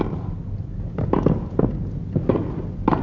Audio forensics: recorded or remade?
recorded